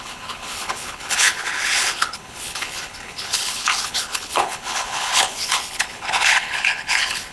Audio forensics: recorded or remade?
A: remade